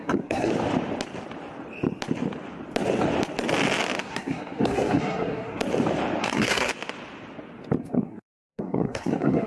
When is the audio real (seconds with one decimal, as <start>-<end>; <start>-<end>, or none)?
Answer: 0.5-4.0; 5.6-6.2; 6.7-7.8